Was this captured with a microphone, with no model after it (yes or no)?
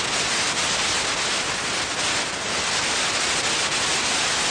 yes